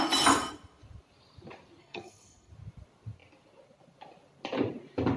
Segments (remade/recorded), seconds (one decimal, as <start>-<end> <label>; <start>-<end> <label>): 0.0-1.8 recorded; 1.8-2.5 remade; 2.5-5.2 recorded

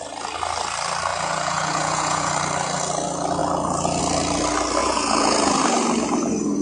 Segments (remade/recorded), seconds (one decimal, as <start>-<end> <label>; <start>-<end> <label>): 0.0-1.1 recorded; 1.1-2.3 remade; 2.3-4.8 recorded; 4.8-5.6 remade; 5.6-6.6 recorded

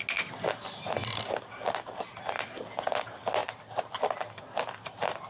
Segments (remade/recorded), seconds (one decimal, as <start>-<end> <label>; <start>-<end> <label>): 0.0-5.3 recorded